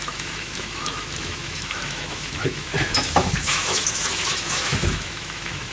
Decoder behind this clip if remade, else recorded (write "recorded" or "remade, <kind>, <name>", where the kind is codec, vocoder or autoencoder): remade, autoencoder, DAC-VAE